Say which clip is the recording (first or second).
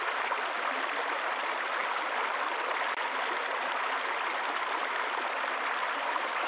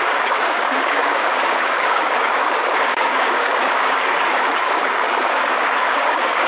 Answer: first